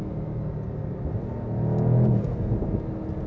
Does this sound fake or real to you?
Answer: real